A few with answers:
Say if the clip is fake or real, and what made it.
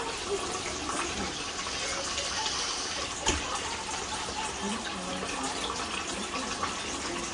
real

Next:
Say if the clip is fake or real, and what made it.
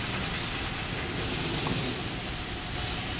real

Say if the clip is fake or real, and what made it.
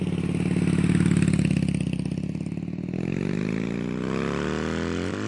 real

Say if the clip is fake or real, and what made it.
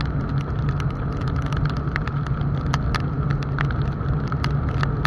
real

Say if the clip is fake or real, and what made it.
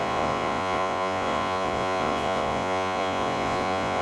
fake, vocoder, Vocos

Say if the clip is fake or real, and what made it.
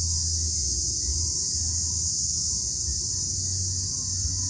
real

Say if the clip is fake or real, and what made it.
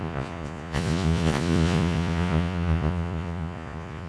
fake, vocoder, Vocos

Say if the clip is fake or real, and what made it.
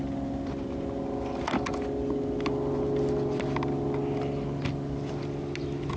real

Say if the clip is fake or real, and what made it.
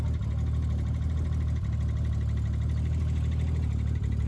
real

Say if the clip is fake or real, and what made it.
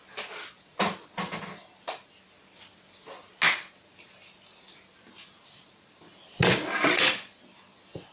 real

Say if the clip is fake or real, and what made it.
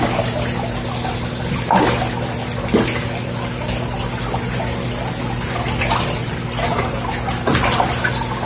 real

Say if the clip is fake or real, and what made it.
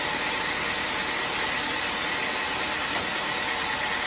real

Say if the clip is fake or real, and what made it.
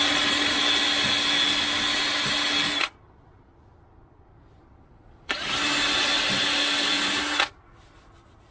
real